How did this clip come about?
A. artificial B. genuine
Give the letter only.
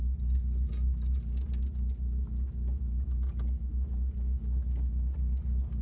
B